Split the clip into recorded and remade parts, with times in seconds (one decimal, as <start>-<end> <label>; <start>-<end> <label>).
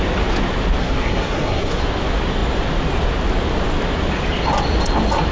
0.0-0.8 recorded; 0.8-1.8 remade; 1.8-5.3 recorded